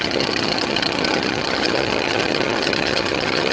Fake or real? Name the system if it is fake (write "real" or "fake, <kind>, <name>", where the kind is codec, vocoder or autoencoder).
fake, vocoder, HiFi-GAN